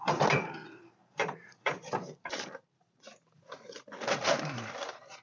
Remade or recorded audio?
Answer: remade